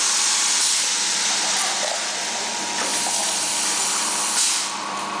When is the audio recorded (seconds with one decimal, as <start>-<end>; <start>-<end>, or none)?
0.0-5.2

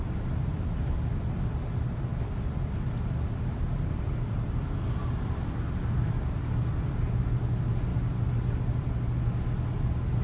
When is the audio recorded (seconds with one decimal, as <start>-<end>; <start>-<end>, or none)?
0.0-10.2